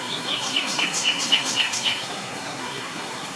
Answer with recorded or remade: remade